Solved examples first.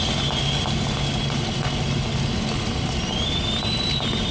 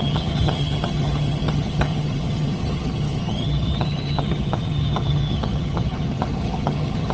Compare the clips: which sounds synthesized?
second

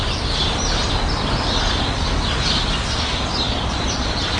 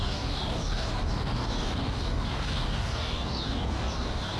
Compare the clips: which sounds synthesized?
second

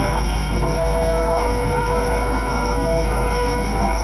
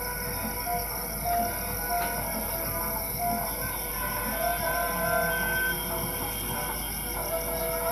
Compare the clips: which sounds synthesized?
first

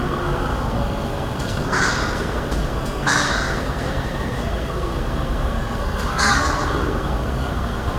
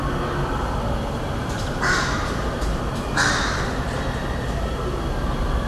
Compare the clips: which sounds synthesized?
first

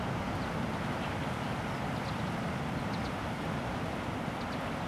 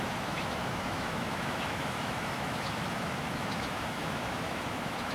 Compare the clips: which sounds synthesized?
second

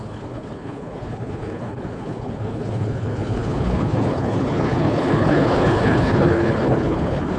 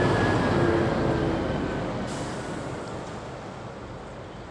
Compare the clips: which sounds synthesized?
first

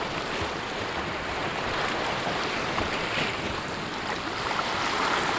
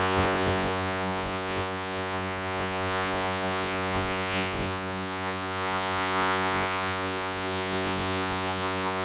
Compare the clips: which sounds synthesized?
second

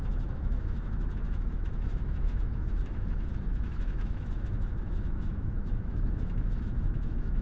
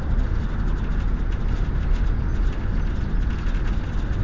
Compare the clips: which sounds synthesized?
first